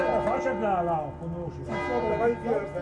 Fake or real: real